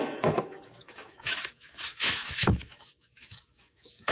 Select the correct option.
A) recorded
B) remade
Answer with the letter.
B